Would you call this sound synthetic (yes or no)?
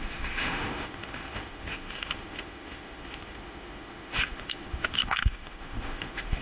yes